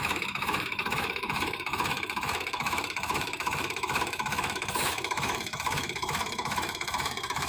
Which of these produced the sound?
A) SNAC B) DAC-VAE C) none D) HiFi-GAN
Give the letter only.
B